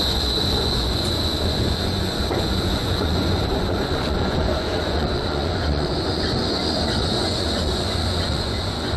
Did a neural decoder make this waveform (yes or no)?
yes